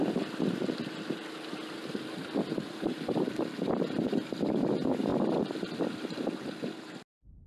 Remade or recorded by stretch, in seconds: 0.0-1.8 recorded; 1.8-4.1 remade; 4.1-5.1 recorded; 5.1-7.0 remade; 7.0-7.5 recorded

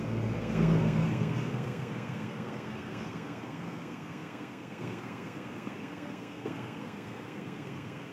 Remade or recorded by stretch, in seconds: 0.0-8.1 remade

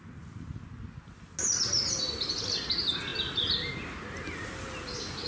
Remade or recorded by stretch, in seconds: 0.0-5.3 recorded

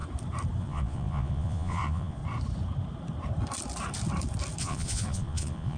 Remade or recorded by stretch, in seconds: 0.0-0.6 recorded; 0.6-2.2 remade; 2.2-4.6 recorded; 4.6-5.8 remade

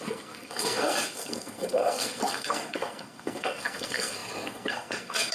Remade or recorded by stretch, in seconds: 0.0-5.3 remade

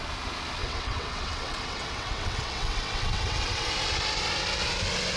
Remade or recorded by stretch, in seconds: 0.0-0.6 recorded; 0.6-3.7 remade; 3.7-5.2 recorded